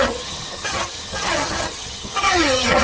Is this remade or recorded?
remade